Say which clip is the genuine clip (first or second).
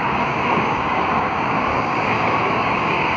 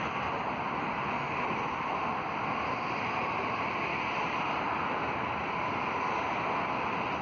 second